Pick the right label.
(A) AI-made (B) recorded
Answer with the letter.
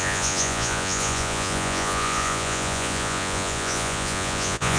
A